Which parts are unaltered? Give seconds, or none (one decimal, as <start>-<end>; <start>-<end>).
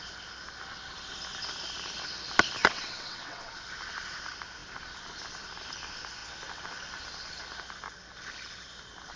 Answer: 0.0-2.6; 3.5-9.2